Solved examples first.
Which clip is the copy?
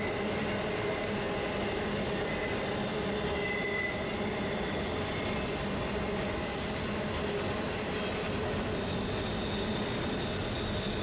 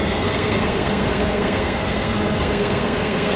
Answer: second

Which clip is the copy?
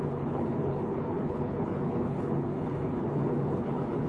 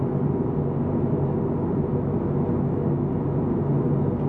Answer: first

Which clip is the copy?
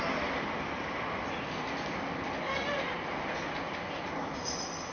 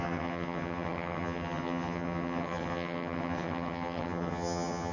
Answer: second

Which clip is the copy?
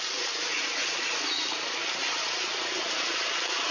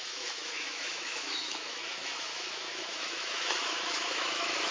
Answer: second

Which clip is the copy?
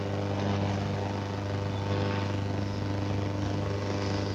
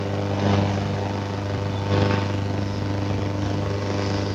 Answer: second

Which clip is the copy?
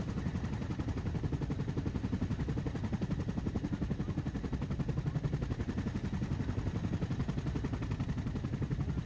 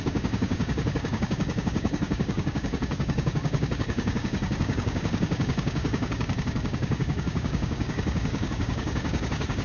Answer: second